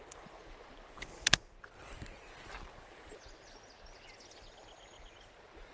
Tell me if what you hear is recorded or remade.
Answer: recorded